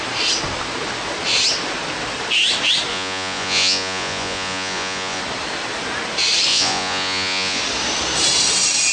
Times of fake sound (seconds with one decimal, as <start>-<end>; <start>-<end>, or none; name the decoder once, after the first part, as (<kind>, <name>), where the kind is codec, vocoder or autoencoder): 2.9-5.2 (vocoder, Vocos); 6.5-7.6